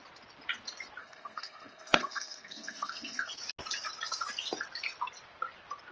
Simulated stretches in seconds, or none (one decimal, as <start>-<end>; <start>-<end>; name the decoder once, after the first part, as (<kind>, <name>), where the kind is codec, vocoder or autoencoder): 1.0-3.3 (codec, SNAC)